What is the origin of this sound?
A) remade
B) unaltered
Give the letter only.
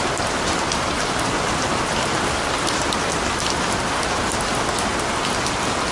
B